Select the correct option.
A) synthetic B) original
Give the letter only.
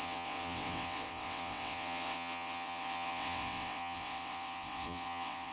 A